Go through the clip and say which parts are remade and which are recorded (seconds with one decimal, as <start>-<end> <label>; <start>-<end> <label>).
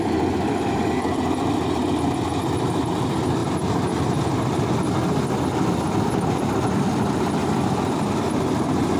0.0-3.4 remade; 3.4-6.8 recorded; 6.8-9.0 remade